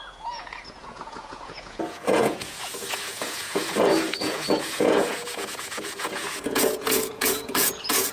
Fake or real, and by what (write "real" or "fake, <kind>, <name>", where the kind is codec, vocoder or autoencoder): fake, vocoder, Vocos